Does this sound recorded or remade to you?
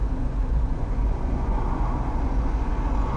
remade